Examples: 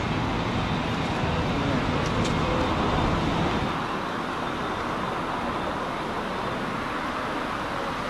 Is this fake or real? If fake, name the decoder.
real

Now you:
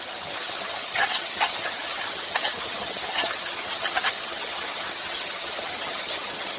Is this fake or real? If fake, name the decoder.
fake, vocoder, HiFi-GAN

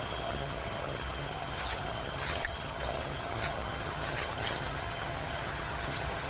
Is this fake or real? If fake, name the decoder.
fake, vocoder, HiFi-GAN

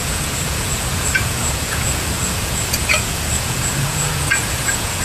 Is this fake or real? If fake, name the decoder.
fake, vocoder, Vocos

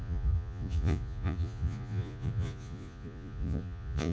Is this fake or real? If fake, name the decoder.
fake, vocoder, Vocos